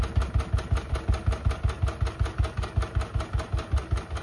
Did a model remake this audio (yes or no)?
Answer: no